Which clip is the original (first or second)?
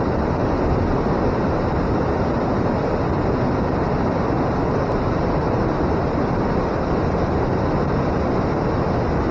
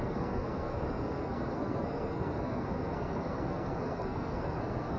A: first